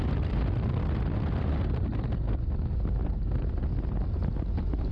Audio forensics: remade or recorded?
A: recorded